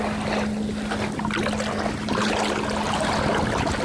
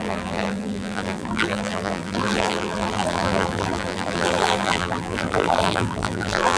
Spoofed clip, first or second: second